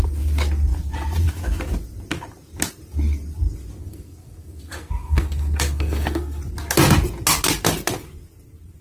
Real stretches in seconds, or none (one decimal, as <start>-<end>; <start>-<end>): 0.0-3.8; 6.4-8.8